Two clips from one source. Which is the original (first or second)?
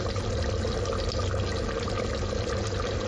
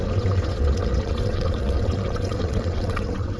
first